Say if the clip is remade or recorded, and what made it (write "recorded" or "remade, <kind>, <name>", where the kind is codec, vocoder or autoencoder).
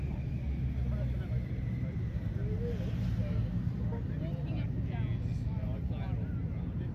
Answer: recorded